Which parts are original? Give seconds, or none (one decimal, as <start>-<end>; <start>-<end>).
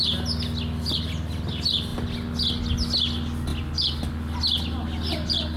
0.0-5.6